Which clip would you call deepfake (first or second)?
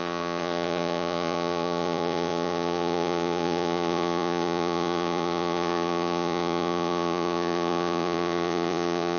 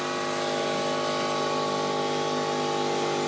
first